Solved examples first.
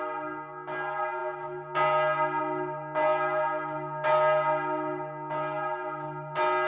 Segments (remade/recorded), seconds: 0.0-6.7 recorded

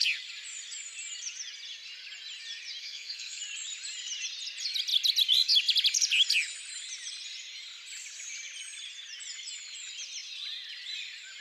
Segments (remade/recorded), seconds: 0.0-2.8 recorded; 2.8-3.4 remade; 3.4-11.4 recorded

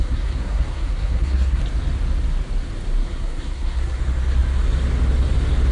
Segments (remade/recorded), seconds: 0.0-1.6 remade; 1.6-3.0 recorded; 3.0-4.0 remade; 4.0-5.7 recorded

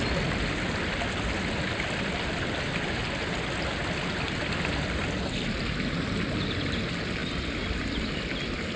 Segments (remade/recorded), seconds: 0.0-8.8 recorded

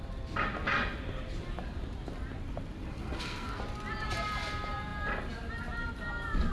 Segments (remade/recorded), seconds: 0.0-2.8 recorded; 2.8-3.6 remade; 3.6-6.5 recorded

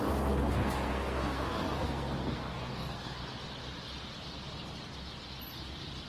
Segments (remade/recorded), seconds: 0.0-3.2 remade; 3.2-6.1 recorded